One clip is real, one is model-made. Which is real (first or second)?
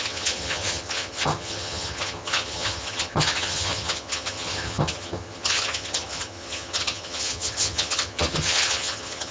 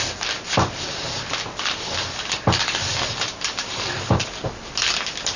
second